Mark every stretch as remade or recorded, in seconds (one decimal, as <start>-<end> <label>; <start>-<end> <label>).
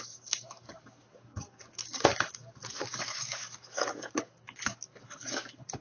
0.0-5.8 remade